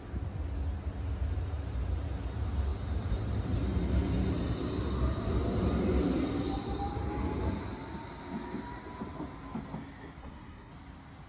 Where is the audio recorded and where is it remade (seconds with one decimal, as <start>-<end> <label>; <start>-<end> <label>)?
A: 0.0-10.2 recorded; 10.2-10.7 remade; 10.7-11.3 recorded